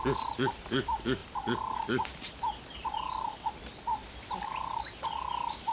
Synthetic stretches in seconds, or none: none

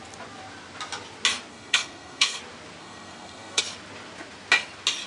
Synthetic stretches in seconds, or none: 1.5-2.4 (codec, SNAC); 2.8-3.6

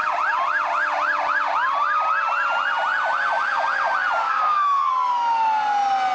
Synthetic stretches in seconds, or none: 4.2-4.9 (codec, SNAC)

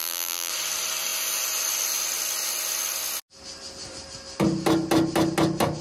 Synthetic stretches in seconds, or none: 0.0-0.5 (vocoder, BigVGAN v2)

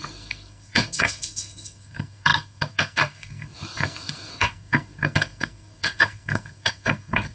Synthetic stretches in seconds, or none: 0.0-7.3 (codec, SNAC)

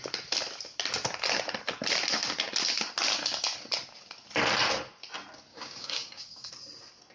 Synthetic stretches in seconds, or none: 5.5-6.5 (codec, DAC)

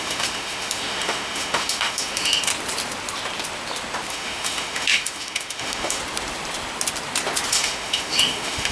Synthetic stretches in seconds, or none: 0.0-2.5 (autoencoder, DAC-VAE); 4.1-6.0; 7.5-8.7

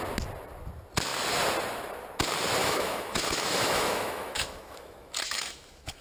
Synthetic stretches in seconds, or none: 2.6-6.0 (autoencoder, DAC-VAE)